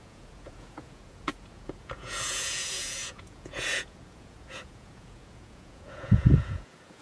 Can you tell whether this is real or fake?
fake